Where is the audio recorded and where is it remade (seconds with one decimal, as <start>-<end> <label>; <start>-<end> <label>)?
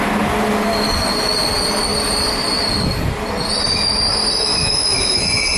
0.0-4.5 recorded; 4.5-5.6 remade